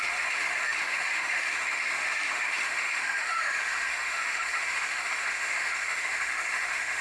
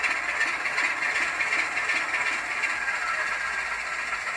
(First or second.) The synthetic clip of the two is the first